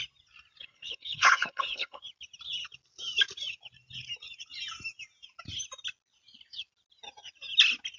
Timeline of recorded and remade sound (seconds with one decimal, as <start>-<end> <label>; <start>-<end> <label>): 0.0-0.6 recorded; 0.6-2.0 remade; 2.0-8.0 recorded